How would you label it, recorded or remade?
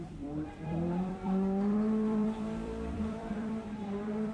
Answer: remade